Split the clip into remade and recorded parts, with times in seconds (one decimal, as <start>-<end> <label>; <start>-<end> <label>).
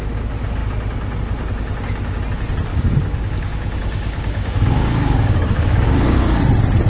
0.0-2.7 recorded; 2.7-6.4 remade; 6.4-6.9 recorded